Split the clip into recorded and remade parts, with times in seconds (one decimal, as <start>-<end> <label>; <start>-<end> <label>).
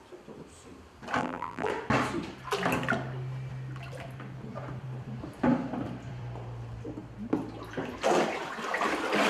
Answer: 0.0-1.2 recorded; 1.2-1.7 remade; 1.7-9.3 recorded